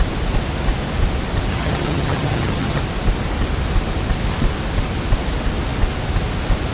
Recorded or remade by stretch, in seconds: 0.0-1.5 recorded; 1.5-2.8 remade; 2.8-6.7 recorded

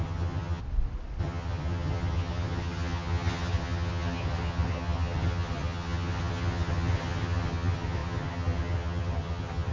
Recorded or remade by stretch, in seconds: 0.0-0.6 remade; 0.6-1.2 recorded; 1.2-9.7 remade

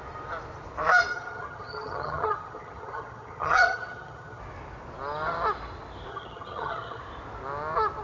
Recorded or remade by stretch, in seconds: 0.0-1.1 recorded; 1.1-4.4 remade; 4.4-6.1 recorded; 6.1-7.0 remade; 7.0-8.0 recorded

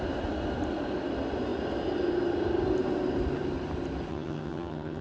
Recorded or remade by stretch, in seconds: 0.0-4.1 recorded; 4.1-5.0 remade

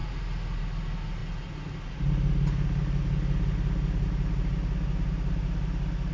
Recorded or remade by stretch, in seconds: 0.0-6.1 recorded

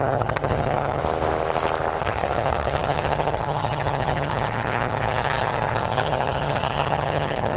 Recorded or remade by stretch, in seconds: 0.0-1.0 remade; 1.0-2.0 recorded; 2.0-7.6 remade

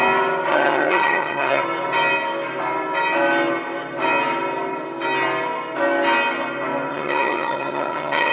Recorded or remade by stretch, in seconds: 0.0-0.5 recorded; 0.5-1.6 remade; 1.6-6.9 recorded; 6.9-8.3 remade

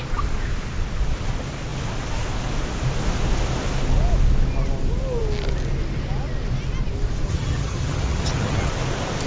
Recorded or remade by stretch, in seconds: 0.0-7.3 recorded; 7.3-8.7 remade; 8.7-9.3 recorded